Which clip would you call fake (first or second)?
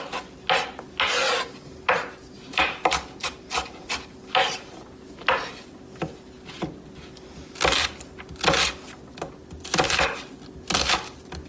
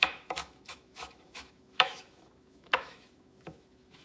second